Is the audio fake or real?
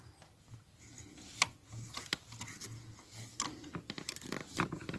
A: real